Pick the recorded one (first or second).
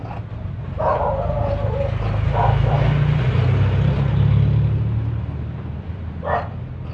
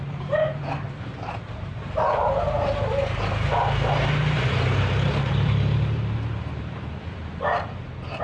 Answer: first